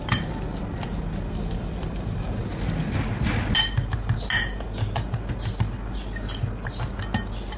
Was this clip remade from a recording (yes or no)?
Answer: no